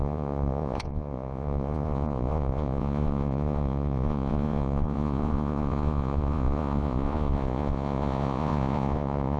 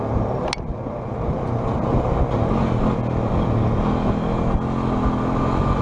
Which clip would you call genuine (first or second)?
second